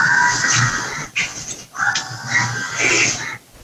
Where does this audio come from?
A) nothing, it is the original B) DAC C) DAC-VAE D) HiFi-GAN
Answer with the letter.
A